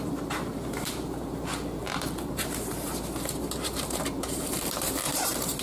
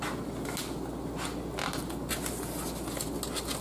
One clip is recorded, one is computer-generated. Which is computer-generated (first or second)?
first